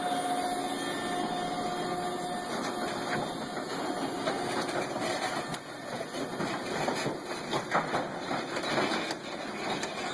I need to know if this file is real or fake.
real